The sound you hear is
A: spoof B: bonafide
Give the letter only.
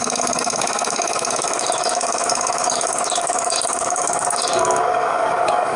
A